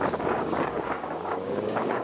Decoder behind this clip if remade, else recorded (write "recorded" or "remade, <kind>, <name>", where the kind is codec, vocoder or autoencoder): remade, codec, DAC